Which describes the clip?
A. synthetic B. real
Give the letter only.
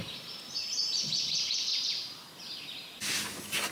B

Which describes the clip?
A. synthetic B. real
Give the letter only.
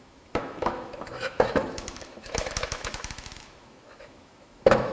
A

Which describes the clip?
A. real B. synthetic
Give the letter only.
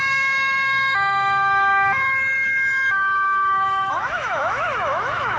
B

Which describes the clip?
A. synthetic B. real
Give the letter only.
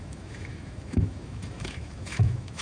A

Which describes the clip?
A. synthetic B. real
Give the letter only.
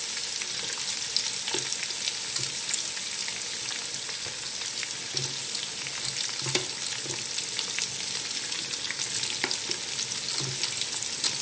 B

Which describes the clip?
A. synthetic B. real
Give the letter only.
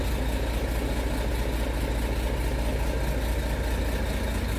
B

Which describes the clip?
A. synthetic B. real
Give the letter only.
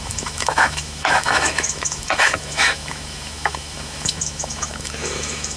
A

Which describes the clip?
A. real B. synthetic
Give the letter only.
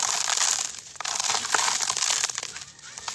A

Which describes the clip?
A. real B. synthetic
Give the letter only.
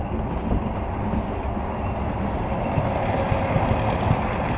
A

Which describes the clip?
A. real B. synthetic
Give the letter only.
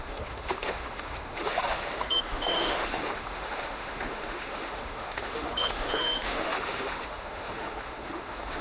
B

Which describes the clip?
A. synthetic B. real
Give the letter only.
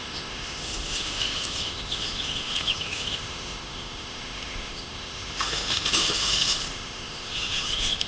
A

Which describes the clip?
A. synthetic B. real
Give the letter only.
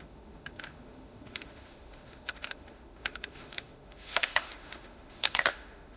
A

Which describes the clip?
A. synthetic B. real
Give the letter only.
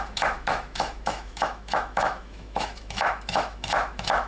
A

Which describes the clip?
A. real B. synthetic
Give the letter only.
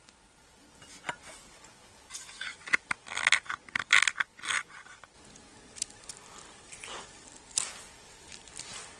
A